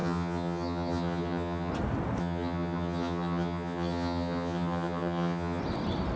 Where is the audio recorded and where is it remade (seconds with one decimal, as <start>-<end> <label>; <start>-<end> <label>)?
0.0-1.7 remade; 1.7-2.2 recorded; 2.2-5.6 remade; 5.6-6.2 recorded

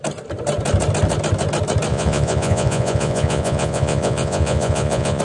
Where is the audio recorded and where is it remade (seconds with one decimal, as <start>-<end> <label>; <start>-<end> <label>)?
0.0-1.9 recorded; 1.9-5.2 remade

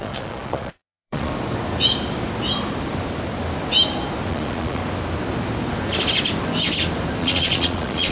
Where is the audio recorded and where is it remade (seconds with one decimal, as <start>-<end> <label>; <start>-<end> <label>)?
0.0-1.3 remade; 1.3-4.3 recorded; 4.3-4.8 remade; 4.8-7.2 recorded; 7.2-8.1 remade

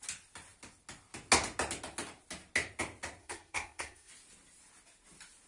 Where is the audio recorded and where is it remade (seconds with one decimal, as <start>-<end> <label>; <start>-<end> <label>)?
0.0-3.2 recorded; 3.2-4.1 remade; 4.1-5.5 recorded

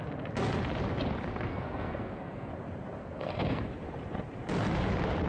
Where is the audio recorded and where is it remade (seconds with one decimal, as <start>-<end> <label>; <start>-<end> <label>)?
0.0-1.5 recorded; 1.5-2.5 remade; 2.5-3.0 recorded; 3.0-3.6 remade; 3.6-5.3 recorded

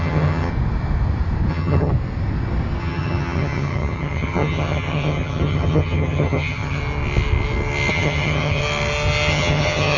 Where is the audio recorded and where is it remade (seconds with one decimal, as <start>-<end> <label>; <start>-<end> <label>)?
0.0-0.5 remade; 0.5-1.5 recorded; 1.5-1.9 remade; 1.9-2.8 recorded; 2.8-6.8 remade; 6.8-7.9 recorded; 7.9-8.6 remade; 8.6-9.3 recorded; 9.3-10.0 remade

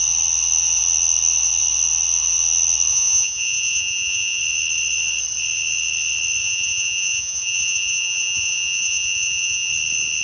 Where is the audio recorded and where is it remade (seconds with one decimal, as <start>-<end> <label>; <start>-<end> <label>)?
0.0-2.9 recorded; 2.9-4.4 remade; 4.4-6.4 recorded; 6.4-9.7 remade; 9.7-10.2 recorded

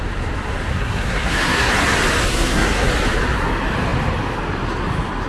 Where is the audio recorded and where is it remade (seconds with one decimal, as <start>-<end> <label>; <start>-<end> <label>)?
0.0-0.7 recorded; 0.7-1.7 remade; 1.7-2.3 recorded; 2.3-2.9 remade; 2.9-5.3 recorded